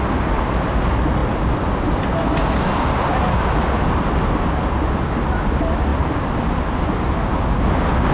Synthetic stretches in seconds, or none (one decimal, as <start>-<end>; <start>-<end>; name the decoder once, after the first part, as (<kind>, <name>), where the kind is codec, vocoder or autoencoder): none